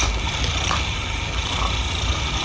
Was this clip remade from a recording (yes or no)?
no